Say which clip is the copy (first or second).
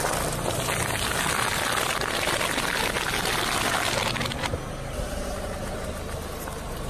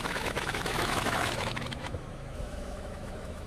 second